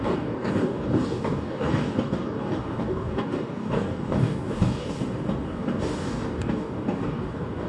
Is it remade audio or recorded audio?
remade